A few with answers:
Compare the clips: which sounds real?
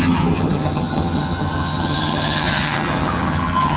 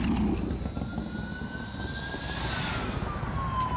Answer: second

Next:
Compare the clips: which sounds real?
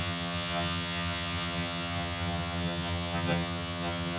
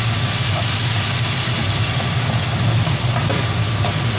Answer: second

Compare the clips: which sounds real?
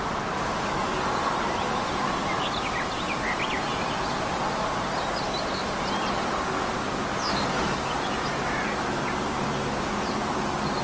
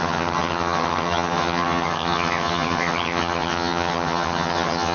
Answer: first